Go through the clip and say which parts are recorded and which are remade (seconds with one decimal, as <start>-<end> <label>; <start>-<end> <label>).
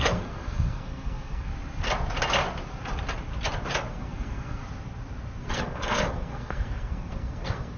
0.0-1.5 remade; 1.5-3.9 recorded; 3.9-4.6 remade; 4.6-5.4 recorded; 5.4-7.8 remade